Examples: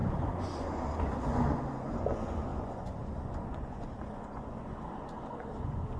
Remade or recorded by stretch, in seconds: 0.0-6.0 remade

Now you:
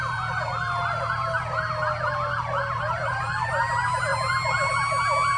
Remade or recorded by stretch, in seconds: 0.0-5.4 recorded

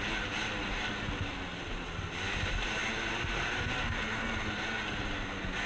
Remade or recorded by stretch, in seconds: 0.0-5.7 recorded

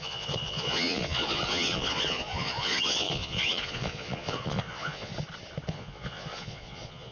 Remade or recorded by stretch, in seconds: 0.0-5.1 remade; 5.1-5.7 recorded; 5.7-7.1 remade